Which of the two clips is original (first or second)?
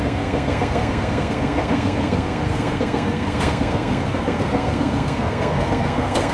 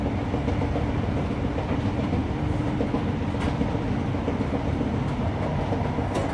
second